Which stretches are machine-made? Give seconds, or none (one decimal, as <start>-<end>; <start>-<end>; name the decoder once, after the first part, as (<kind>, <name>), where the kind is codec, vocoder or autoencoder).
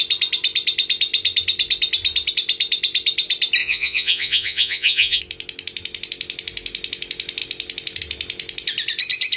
3.6-5.2 (vocoder, Vocos)